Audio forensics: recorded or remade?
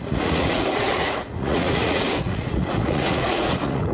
remade